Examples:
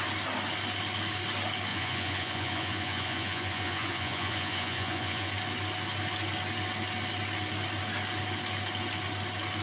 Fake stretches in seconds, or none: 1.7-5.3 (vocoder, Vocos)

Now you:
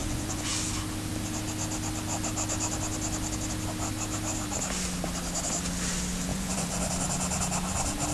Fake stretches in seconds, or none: 0.0-0.5 (vocoder, Vocos); 6.3-6.9